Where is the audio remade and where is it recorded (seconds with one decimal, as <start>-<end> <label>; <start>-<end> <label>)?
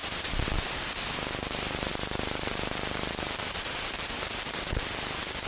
0.0-5.5 remade